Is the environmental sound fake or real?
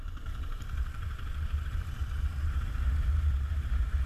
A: fake